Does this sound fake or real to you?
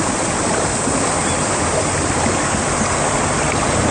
real